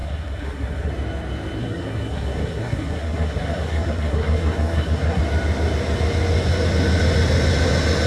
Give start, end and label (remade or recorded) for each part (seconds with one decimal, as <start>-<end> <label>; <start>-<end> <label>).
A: 0.0-0.9 remade; 0.9-1.6 recorded; 1.6-5.2 remade; 5.2-8.1 recorded